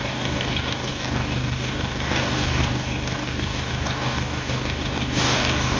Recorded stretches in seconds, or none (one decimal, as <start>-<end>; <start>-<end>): none